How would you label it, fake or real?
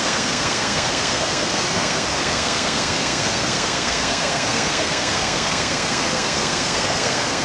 fake